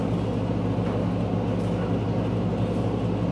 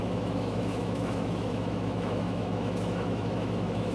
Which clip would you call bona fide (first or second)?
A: first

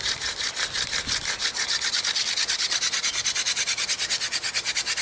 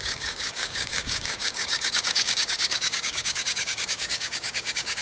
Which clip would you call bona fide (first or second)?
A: first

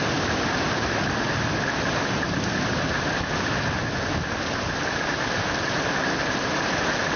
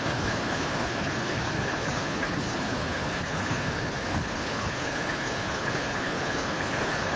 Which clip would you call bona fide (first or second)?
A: first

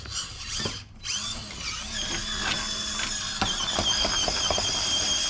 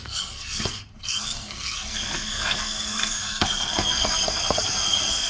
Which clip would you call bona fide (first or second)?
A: first